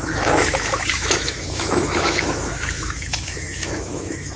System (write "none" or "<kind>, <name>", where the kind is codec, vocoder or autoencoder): autoencoder, DAC-VAE